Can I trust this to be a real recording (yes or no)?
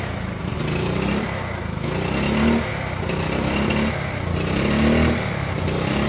yes